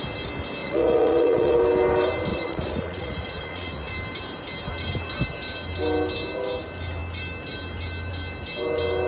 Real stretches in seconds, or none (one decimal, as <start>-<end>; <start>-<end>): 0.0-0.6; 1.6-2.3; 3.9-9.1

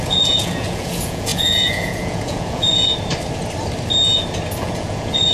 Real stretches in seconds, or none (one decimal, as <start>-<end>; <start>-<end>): 2.9-4.6

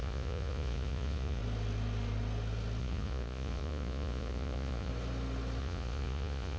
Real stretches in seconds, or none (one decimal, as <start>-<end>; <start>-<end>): 1.4-2.8; 4.9-5.6

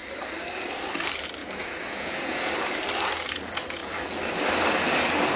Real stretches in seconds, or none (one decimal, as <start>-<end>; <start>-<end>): 0.0-1.4; 2.5-5.4

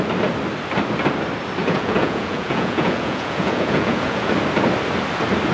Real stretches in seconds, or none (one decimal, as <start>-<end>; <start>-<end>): 0.0-1.6; 4.3-5.5

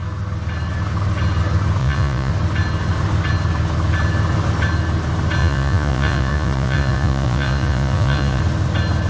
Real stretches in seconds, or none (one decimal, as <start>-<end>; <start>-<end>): 0.0-1.8; 2.3-5.4; 8.4-9.1

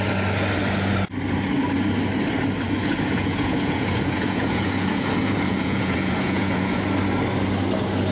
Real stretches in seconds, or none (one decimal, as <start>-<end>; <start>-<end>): 0.0-2.8; 6.8-8.1